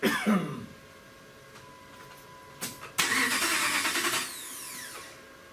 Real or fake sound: real